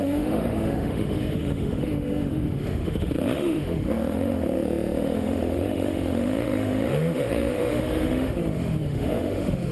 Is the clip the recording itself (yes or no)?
no